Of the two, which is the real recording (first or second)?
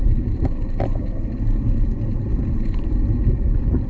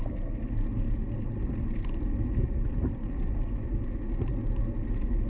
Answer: second